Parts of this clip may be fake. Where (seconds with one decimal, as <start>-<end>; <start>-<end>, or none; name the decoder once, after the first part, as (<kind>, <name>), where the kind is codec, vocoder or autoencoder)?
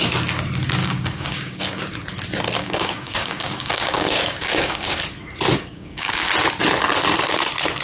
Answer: 0.8-1.8 (codec, DAC); 2.6-5.0; 5.7-6.3